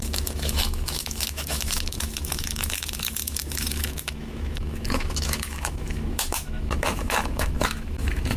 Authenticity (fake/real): fake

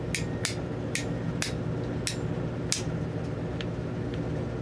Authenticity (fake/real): real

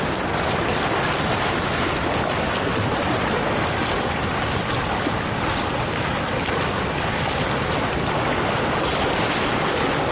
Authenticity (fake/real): real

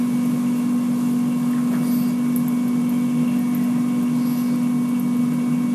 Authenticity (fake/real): real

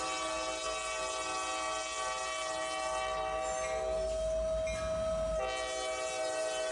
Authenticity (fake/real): real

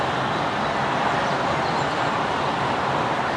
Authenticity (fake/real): real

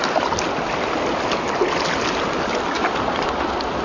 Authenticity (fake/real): real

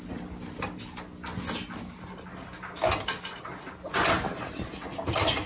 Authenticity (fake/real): real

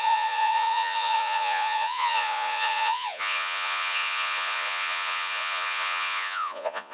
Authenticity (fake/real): fake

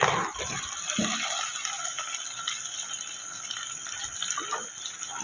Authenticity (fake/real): real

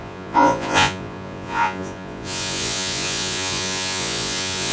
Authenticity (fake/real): fake